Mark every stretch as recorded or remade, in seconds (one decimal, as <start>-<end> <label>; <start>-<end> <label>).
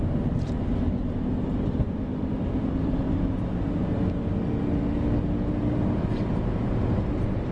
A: 0.0-7.5 recorded